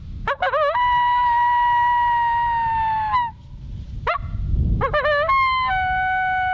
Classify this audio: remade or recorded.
recorded